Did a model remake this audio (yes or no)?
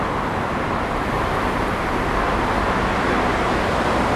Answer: no